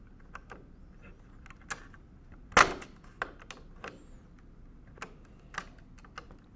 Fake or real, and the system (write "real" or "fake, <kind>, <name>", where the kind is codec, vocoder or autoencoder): real